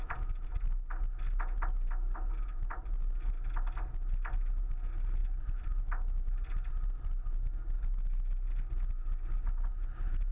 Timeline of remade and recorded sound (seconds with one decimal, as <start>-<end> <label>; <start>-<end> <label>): 0.0-10.3 recorded